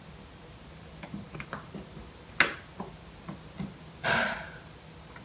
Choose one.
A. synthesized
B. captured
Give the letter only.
B